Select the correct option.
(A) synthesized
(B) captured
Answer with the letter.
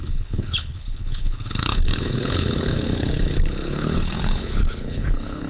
A